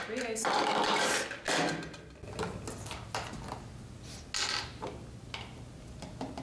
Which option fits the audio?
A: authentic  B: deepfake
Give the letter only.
A